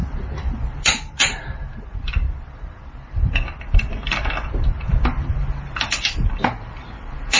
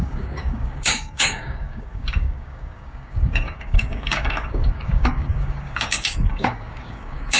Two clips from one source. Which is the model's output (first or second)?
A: second